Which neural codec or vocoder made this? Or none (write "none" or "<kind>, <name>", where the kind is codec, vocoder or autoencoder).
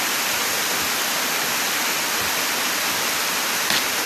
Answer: none